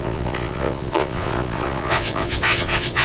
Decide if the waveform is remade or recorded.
remade